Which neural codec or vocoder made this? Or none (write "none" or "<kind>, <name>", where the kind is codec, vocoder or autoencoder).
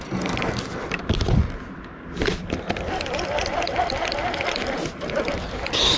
none